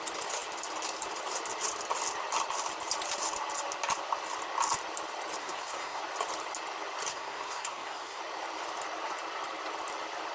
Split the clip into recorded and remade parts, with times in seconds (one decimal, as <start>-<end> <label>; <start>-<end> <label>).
0.0-5.4 recorded; 5.4-6.0 remade; 6.0-7.1 recorded; 7.1-8.2 remade; 8.2-10.3 recorded